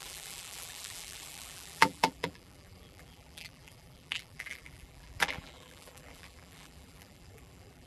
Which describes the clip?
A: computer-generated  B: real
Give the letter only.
A